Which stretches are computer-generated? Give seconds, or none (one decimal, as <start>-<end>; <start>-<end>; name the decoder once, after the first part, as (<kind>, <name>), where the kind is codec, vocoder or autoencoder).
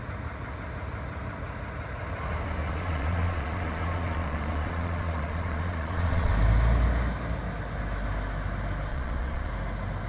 2.6-6.3 (vocoder, Vocos); 8.9-9.5